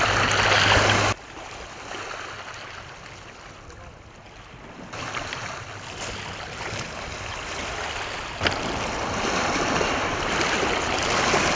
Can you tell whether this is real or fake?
real